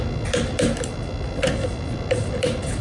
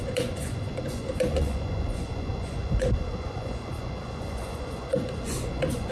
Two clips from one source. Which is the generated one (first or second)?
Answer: second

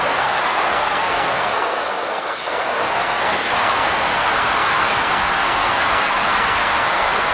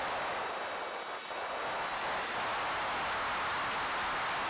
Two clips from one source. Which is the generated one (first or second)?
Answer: first